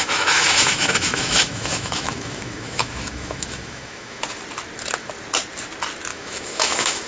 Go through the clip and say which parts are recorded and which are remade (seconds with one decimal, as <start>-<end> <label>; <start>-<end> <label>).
0.0-4.2 remade; 4.2-6.1 recorded; 6.1-7.1 remade